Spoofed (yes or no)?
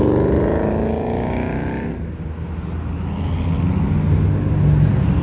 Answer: no